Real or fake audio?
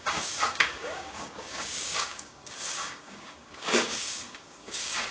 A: fake